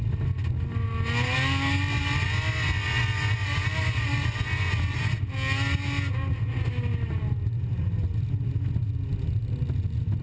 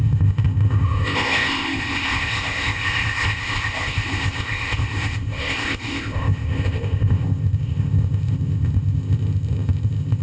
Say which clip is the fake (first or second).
second